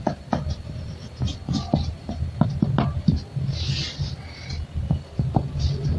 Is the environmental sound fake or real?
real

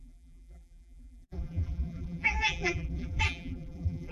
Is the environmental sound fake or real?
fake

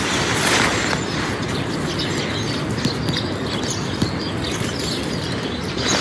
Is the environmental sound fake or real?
real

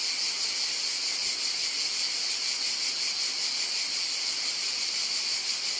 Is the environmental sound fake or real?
real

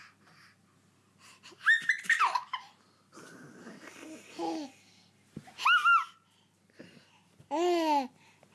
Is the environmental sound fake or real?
real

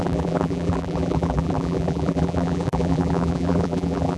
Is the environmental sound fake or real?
fake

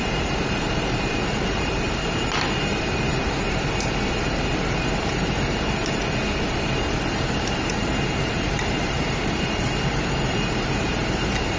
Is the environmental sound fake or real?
fake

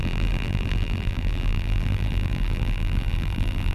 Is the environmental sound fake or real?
fake